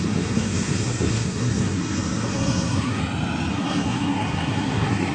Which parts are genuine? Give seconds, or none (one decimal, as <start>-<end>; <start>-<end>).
3.0-3.5